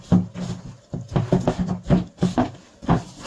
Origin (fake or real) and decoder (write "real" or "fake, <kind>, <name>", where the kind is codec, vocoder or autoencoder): real